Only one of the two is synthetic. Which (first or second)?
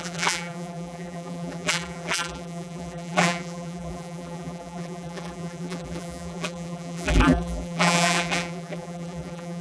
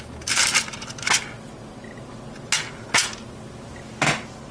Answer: first